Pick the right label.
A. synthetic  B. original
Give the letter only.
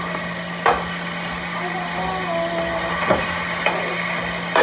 B